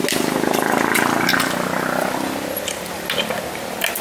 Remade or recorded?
recorded